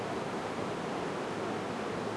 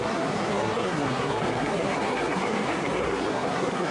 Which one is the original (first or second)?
first